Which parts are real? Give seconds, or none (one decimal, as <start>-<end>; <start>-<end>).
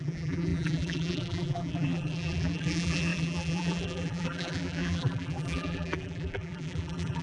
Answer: none